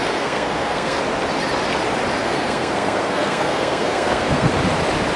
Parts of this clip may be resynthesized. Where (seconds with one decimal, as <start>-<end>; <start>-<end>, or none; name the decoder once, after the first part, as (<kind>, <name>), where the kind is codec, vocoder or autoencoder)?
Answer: 0.0-1.0 (codec, SNAC); 2.2-4.5